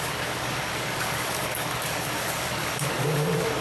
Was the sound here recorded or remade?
remade